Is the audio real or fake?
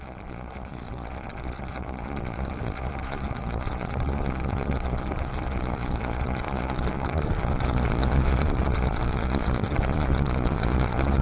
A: fake